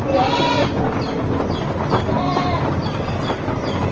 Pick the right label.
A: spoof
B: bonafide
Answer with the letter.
B